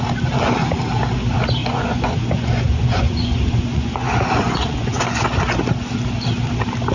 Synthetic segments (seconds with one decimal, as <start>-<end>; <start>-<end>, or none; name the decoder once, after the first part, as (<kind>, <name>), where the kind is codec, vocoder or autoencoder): 1.6-5.2 (vocoder, Vocos)